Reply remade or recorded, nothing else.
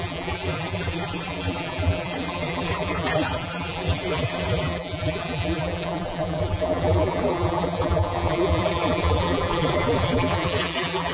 remade